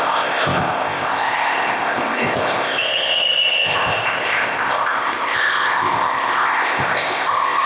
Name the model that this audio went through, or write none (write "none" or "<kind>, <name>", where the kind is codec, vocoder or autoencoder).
codec, ZipCodec